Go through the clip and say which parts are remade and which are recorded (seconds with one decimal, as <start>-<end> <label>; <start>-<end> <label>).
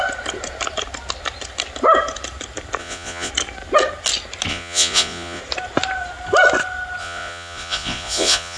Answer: 0.0-2.8 recorded; 2.8-3.3 remade; 3.3-4.5 recorded; 4.5-5.4 remade; 5.4-7.0 recorded; 7.0-8.6 remade